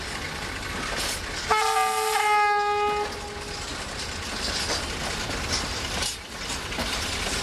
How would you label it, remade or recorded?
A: recorded